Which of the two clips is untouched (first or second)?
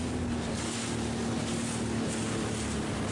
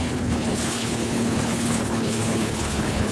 first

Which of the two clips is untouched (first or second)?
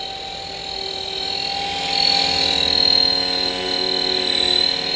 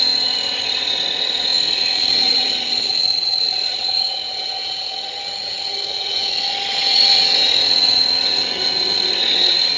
first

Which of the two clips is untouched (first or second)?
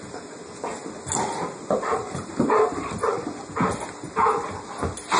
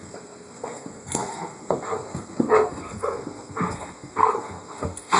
first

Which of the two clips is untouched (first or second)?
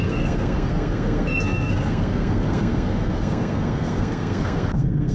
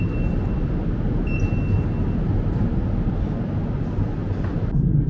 second